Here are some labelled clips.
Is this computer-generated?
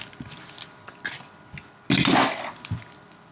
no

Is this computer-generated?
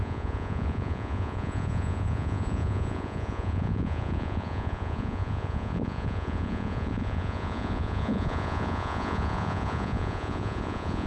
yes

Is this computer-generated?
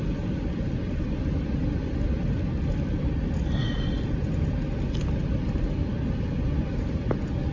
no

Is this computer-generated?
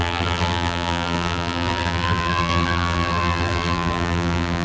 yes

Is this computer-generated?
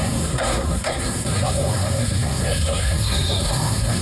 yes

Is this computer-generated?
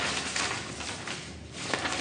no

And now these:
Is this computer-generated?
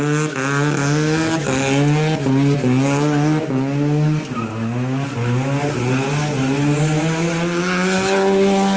no